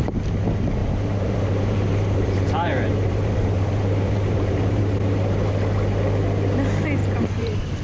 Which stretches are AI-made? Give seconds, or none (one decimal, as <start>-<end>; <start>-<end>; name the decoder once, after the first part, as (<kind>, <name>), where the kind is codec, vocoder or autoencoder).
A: 0.8-4.8 (vocoder, BigVGAN v2); 7.0-7.8